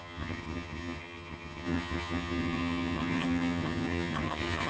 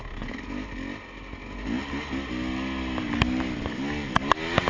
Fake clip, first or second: first